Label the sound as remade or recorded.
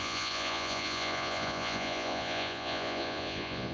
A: remade